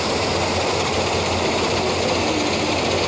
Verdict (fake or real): real